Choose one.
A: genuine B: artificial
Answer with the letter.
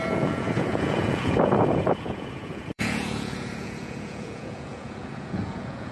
B